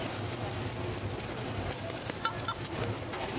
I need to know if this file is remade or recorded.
recorded